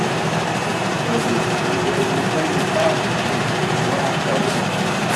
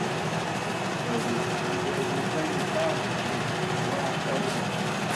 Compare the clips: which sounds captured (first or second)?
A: second